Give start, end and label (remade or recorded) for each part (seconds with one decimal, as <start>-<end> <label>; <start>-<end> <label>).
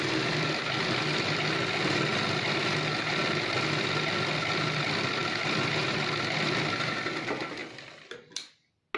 0.0-9.0 recorded